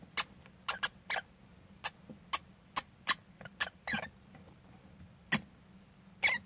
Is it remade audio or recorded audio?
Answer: recorded